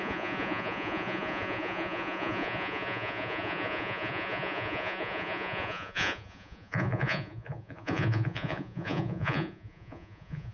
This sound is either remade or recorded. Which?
remade